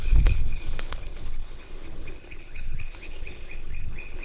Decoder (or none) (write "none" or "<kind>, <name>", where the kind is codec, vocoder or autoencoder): codec, HILCodec